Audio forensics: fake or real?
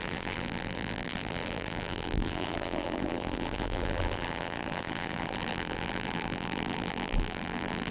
fake